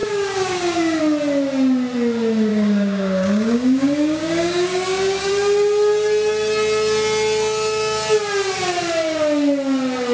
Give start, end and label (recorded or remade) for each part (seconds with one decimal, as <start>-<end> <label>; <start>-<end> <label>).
0.0-1.0 remade; 1.0-2.5 recorded; 2.5-5.3 remade; 5.3-10.1 recorded